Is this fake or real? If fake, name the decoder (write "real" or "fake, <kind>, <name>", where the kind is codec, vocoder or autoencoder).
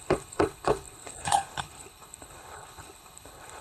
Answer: fake, codec, HILCodec